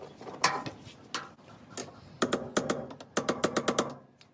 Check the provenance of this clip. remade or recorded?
recorded